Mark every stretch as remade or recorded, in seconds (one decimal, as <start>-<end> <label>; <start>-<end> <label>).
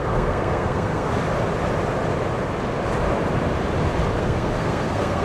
0.0-1.1 remade; 1.1-4.2 recorded; 4.2-5.2 remade